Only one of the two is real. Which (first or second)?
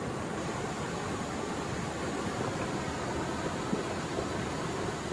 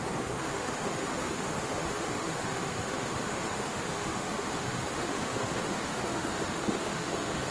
first